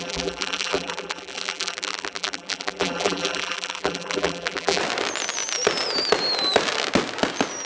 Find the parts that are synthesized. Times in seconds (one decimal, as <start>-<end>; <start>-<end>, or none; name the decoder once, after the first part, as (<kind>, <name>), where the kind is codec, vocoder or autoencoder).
0.0-4.8 (vocoder, BigVGAN v2)